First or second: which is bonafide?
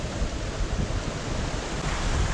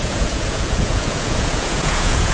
first